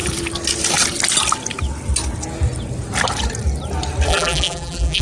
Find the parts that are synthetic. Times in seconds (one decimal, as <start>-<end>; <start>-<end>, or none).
4.1-5.0